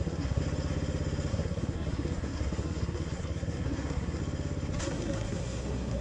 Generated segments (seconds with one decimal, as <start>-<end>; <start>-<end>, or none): 0.0-0.4; 1.3-4.2; 4.8-6.0